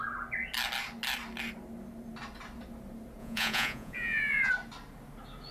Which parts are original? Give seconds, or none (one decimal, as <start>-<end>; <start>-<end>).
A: 0.0-3.2; 4.5-5.5

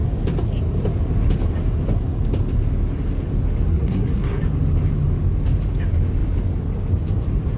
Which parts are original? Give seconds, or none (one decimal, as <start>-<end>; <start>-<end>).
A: 0.0-3.7; 4.4-7.6